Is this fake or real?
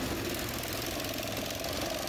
real